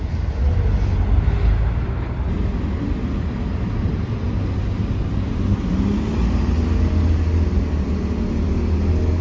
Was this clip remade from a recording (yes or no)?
no